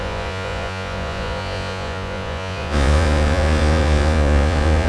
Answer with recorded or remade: remade